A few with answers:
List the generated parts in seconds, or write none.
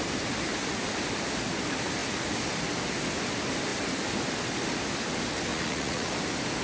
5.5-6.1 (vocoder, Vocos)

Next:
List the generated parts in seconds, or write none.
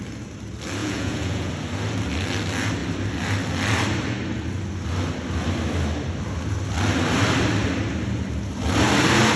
0.8-1.5 (vocoder, Vocos)